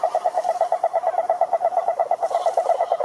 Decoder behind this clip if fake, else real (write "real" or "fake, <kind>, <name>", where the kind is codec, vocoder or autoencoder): real